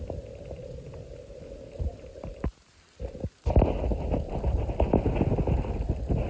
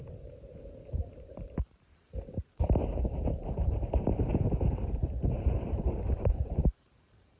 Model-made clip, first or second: second